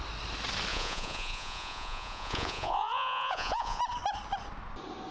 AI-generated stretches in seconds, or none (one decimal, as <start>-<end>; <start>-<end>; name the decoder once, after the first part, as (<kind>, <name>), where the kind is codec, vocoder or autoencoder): 0.7-3.8 (vocoder, Vocos)